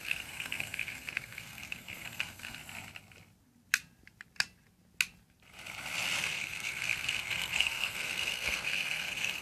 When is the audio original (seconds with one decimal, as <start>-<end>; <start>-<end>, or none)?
2.6-6.2